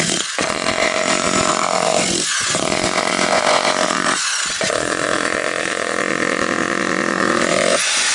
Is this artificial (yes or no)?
yes